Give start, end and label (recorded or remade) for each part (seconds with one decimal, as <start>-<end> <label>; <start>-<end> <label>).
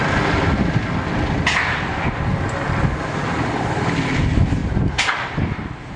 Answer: 0.0-6.0 recorded